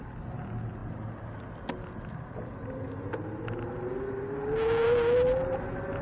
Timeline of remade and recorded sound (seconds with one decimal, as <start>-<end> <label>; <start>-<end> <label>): 0.0-6.0 recorded